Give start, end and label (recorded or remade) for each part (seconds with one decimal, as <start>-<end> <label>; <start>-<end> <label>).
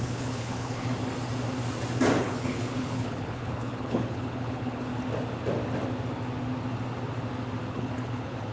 0.0-0.9 remade; 0.9-2.2 recorded; 2.2-4.9 remade; 4.9-7.7 recorded; 7.7-8.5 remade